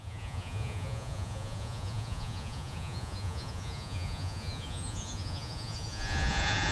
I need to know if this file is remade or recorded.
remade